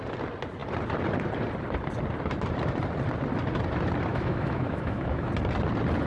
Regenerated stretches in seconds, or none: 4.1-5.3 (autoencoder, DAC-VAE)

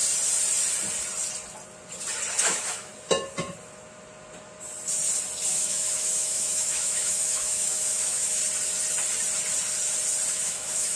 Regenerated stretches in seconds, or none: 2.4-2.9 (autoencoder, DAC-VAE); 5.5-8.4; 10.3-11.0